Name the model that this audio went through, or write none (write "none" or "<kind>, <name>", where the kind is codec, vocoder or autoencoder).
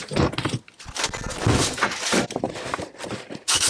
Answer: none